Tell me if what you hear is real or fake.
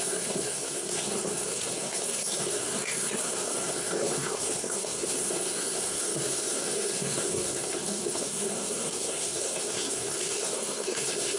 fake